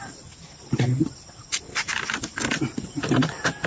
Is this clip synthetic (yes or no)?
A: no